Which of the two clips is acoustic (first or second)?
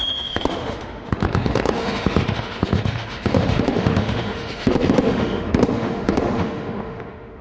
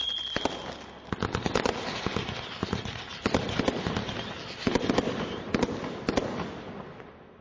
second